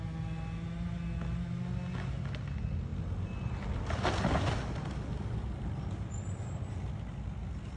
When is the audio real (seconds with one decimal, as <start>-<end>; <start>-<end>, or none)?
0.0-7.8